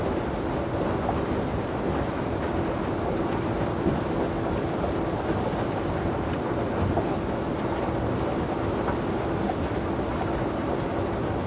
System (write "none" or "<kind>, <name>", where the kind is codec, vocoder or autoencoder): none